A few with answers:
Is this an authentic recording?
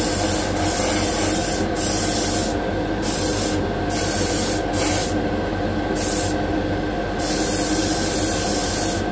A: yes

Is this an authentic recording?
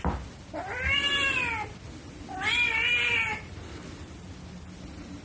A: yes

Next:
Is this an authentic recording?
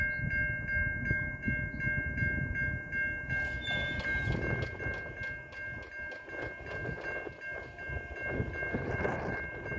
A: yes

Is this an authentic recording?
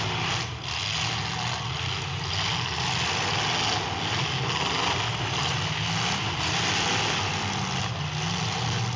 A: yes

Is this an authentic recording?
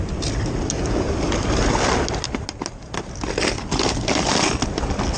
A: yes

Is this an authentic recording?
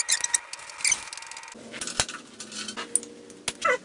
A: yes